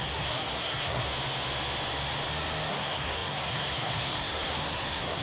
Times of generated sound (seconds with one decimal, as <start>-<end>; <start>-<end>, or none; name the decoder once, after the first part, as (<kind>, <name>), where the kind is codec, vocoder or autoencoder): 0.0-1.1 (codec, SNAC); 2.7-5.2

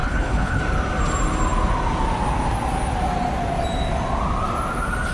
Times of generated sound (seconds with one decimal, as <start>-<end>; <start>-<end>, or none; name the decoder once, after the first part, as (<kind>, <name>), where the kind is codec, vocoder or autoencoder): 0.0-0.6 (codec, HILCodec)

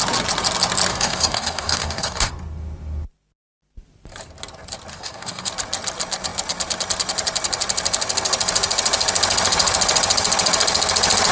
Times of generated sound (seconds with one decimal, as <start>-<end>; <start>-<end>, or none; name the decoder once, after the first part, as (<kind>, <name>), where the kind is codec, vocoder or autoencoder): 0.9-2.3 (codec, DAC); 4.9-5.5

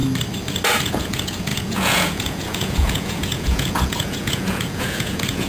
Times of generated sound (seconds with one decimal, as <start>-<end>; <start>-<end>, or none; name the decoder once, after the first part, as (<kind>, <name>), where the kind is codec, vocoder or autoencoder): 0.8-5.5 (vocoder, Vocos)

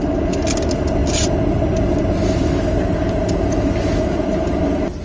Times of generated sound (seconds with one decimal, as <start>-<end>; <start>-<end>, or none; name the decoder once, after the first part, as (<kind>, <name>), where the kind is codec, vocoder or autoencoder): none

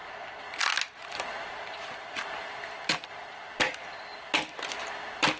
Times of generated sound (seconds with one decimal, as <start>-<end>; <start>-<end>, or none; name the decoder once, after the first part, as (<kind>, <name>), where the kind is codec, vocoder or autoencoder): none

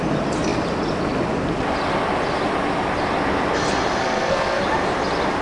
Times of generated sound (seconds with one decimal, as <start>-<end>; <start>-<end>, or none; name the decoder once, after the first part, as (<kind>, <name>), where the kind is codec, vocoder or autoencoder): 4.0-4.6 (codec, SNAC)